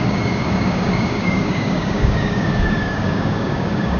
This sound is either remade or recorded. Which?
remade